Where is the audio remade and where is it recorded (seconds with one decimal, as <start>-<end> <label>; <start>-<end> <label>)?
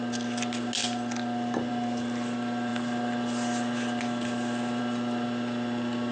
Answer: 0.0-6.1 recorded